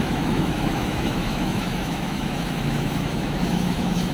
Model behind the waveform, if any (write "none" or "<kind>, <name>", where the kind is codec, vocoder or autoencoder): autoencoder, DAC-VAE